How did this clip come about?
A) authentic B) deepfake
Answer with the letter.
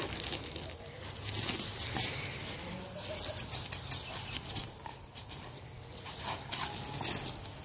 A